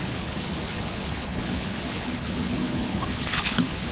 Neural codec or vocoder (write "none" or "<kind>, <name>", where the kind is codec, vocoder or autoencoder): codec, HILCodec